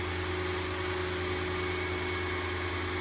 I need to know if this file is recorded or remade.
recorded